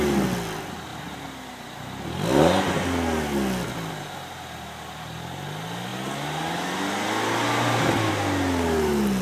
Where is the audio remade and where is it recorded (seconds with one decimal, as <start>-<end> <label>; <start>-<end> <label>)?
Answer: 0.0-9.2 recorded